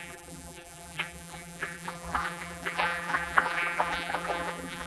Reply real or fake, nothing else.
fake